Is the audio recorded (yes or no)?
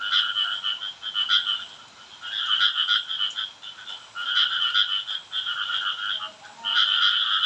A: yes